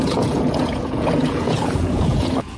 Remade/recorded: remade